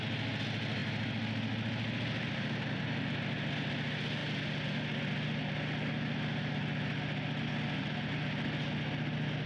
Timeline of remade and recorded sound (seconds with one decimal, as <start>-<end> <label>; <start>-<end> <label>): 0.0-9.5 recorded